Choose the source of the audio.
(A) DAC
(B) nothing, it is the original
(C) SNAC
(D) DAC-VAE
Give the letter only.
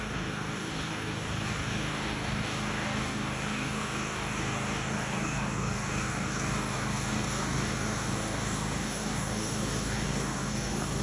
A